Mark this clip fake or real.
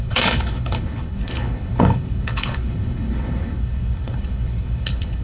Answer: fake